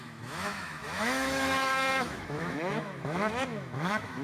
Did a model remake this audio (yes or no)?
yes